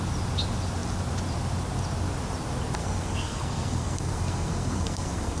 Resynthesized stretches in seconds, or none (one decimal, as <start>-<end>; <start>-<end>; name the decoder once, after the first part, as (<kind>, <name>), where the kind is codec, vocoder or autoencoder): 2.8-5.4 (codec, SNAC)